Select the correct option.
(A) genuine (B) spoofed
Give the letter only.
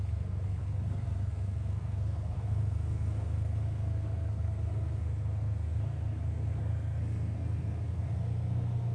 B